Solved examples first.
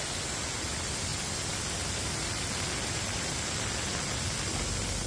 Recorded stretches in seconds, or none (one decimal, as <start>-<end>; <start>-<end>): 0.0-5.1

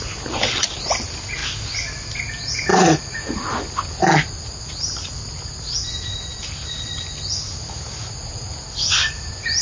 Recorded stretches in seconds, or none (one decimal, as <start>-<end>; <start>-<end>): 0.0-2.7; 3.2-9.6

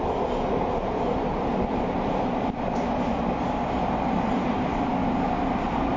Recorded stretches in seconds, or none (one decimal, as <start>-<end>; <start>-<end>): 0.0-6.0

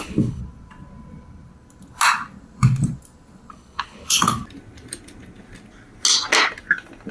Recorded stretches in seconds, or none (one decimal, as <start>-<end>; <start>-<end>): 0.4-3.5; 4.4-7.1

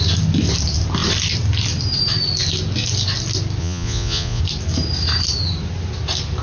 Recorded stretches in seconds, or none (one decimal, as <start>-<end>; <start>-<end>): 0.0-3.6; 4.4-6.4

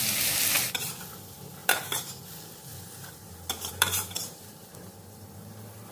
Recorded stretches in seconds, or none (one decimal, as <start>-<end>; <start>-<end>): 0.0-1.6; 2.1-2.7

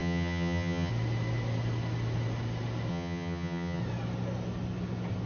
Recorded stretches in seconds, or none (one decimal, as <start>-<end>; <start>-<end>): 0.9-2.9; 3.8-5.3